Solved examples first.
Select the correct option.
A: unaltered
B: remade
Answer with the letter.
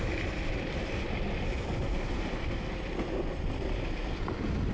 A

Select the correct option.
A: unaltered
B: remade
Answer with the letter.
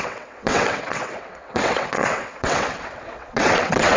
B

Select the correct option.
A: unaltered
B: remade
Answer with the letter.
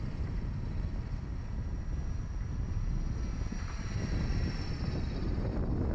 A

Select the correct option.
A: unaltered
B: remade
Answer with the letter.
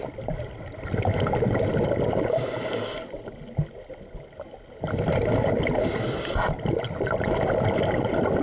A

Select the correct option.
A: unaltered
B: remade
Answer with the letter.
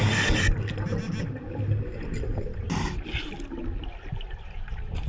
A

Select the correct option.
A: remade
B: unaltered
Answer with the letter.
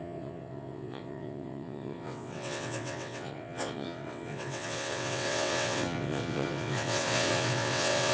A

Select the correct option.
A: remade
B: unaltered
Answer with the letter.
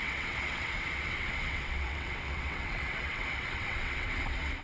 A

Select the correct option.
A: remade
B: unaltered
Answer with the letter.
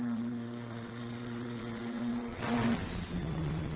A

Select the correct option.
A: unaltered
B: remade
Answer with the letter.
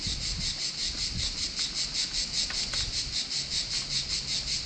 A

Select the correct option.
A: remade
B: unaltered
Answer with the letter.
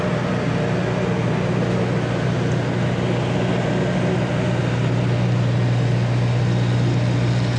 B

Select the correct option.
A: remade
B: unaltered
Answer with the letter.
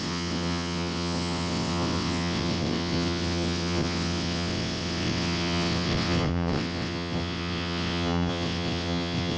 A